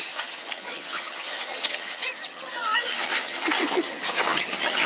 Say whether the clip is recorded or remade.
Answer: remade